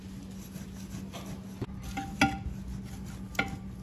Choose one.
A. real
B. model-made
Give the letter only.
A